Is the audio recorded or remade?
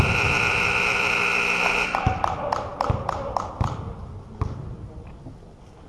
recorded